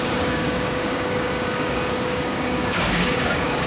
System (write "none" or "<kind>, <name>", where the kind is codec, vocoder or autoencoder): codec, DAC